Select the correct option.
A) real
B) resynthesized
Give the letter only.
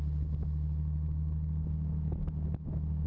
A